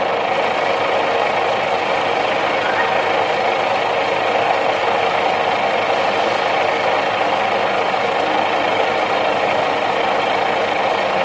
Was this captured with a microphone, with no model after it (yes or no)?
yes